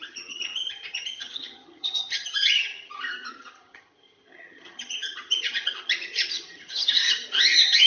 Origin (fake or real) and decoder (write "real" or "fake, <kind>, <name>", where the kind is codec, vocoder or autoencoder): fake, vocoder, HiFi-GAN